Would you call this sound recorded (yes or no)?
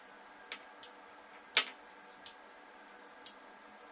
yes